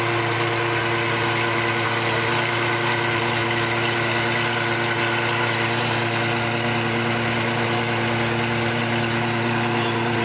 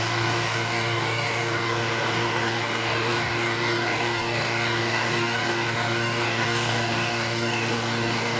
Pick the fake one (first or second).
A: second